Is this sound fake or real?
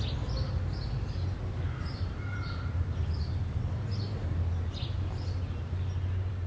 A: real